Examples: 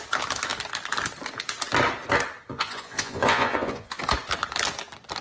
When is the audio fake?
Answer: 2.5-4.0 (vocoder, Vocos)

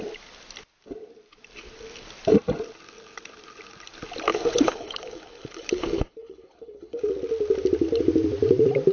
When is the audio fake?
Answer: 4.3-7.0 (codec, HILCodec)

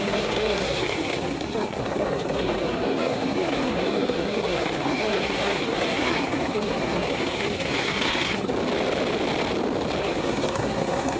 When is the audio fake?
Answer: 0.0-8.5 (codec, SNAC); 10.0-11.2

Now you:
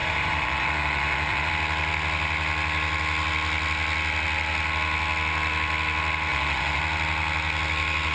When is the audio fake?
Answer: 0.0-1.5 (vocoder, Vocos); 6.3-6.8

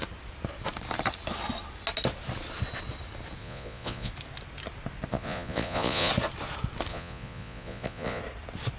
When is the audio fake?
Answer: 3.4-4.1 (vocoder, Vocos); 5.1-6.1; 6.9-8.2